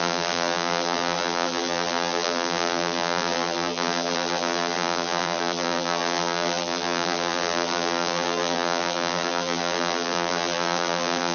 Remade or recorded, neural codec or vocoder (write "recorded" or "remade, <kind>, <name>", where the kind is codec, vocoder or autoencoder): remade, vocoder, BigVGAN v2